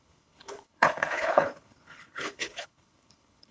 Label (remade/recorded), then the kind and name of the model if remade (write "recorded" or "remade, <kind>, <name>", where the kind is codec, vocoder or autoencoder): remade, codec, HILCodec